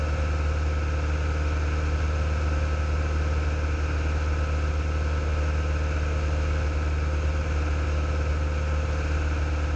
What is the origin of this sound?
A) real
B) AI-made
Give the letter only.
A